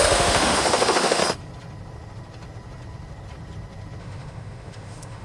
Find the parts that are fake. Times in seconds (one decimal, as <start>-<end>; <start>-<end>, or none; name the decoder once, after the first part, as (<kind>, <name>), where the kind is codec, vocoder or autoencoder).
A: 0.0-1.2 (autoencoder, DAC-VAE); 4.0-5.2